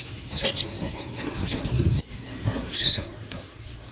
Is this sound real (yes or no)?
no